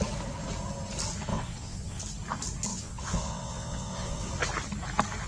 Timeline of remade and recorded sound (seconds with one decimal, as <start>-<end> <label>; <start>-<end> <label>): 0.0-1.3 recorded; 1.3-2.0 remade; 2.0-2.7 recorded; 2.7-4.3 remade; 4.3-5.3 recorded